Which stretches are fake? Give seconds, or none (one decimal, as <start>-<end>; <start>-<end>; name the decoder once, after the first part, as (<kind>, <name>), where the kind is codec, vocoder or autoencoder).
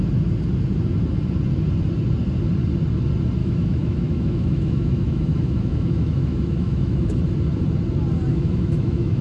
3.4-7.2 (autoencoder, DAC-VAE); 8.3-9.2